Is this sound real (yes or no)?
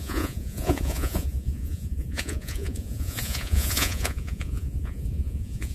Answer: no